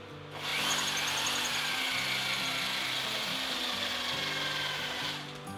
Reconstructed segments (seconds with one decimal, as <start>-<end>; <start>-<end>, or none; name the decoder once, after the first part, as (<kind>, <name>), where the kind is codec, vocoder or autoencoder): none